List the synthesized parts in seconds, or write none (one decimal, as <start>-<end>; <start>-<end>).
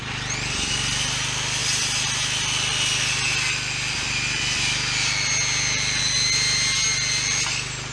none